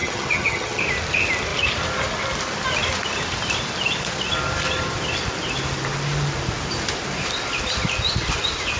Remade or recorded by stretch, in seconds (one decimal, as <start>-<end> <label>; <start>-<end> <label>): 0.0-0.8 remade; 0.8-8.8 recorded